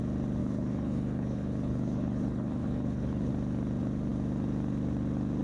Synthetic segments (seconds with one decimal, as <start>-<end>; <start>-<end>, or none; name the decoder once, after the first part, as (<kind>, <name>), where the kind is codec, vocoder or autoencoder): 0.4-3.3 (codec, HILCodec)